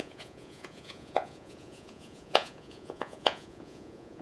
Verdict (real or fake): fake